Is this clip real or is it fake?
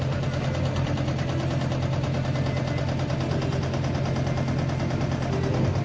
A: real